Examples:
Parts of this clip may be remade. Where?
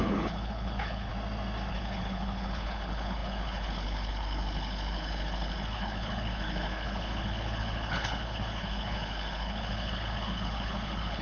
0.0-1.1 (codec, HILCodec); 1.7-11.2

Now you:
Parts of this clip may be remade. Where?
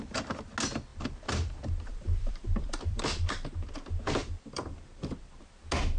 0.9-3.0 (vocoder, BigVGAN v2); 4.2-5.4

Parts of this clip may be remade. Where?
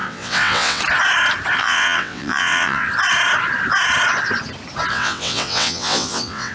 0.0-0.8 (vocoder, WaveNeXt); 1.6-2.9; 4.9-6.5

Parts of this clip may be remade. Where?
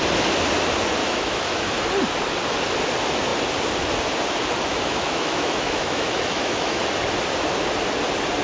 1.0-1.8 (autoencoder, DAC-VAE); 4.7-6.8